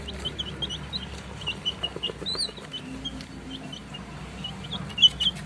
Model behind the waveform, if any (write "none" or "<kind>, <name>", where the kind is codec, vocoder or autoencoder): none